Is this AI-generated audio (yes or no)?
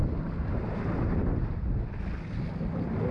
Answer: no